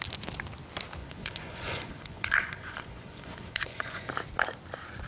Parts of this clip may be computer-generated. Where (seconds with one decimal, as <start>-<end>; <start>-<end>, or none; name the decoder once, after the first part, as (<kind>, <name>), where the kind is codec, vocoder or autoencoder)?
1.0-4.1 (vocoder, Vocos)